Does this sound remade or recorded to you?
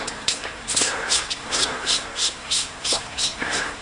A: remade